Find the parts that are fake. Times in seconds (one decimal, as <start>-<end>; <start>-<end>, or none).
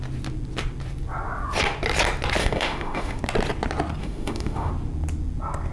2.4-3.2; 4.0-4.7